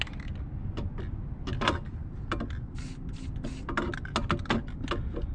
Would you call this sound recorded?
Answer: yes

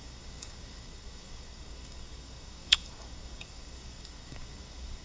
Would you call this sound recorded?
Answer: no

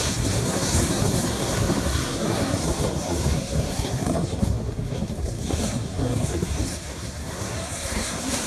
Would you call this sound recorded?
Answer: no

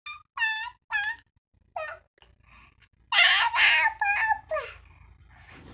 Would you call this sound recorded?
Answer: yes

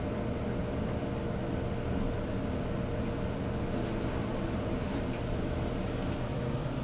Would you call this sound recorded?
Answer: yes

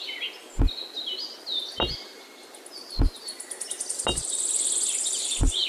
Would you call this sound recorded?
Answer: yes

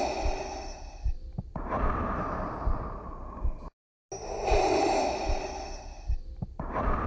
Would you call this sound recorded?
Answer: yes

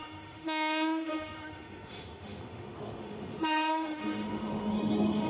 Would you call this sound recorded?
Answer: no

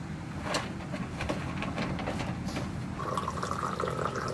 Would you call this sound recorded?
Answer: yes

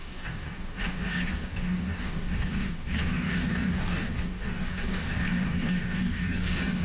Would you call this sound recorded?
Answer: no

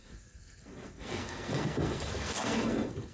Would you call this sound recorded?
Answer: no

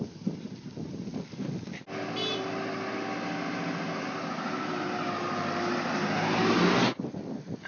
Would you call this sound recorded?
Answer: yes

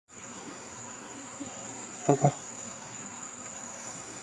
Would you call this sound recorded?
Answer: no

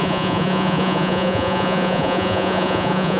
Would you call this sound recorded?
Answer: no